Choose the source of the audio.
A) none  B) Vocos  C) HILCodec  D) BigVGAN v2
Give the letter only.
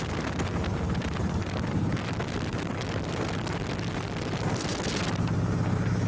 A